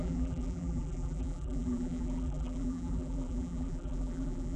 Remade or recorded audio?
remade